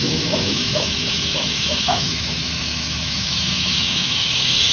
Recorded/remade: remade